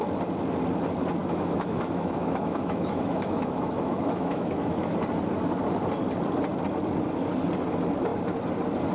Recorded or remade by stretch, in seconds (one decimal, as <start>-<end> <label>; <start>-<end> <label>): 0.0-1.2 recorded; 1.2-4.9 remade; 4.9-8.9 recorded